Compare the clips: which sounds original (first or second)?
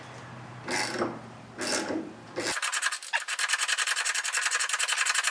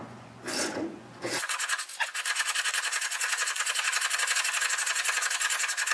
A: first